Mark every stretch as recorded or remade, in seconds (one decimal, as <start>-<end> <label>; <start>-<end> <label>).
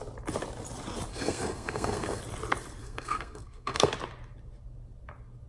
0.0-1.1 recorded; 1.1-2.2 remade; 2.2-2.8 recorded; 2.8-3.9 remade; 3.9-5.5 recorded